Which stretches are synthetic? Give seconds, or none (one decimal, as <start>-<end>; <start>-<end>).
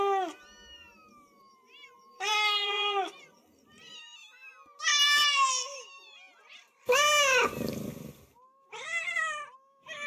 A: 1.0-3.9; 4.9-5.5